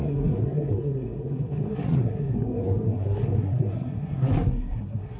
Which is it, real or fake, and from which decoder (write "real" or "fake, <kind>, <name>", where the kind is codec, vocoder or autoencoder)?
fake, codec, SNAC